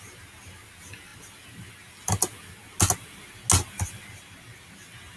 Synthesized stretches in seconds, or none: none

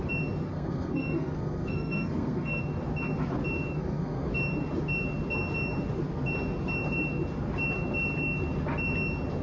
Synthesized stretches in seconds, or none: 0.5-2.6; 3.7-4.3

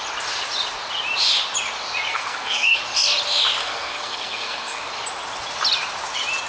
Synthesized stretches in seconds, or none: 2.1-2.8; 3.6-4.9

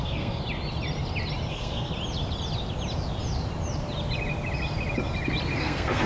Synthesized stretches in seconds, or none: 0.0-0.4; 1.5-1.9; 5.6-6.1

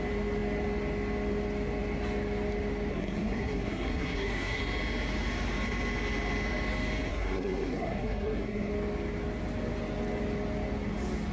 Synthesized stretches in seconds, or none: 2.9-4.6; 7.1-8.7